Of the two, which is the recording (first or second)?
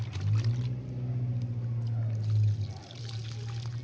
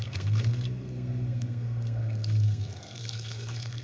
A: first